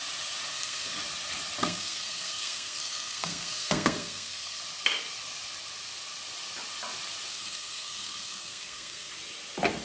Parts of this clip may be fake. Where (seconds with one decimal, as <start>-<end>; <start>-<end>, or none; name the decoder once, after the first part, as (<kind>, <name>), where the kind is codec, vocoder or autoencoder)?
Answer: 0.5-1.0 (codec, SNAC); 1.6-4.6; 7.3-9.1